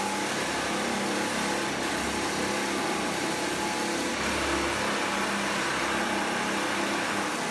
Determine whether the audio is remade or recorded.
recorded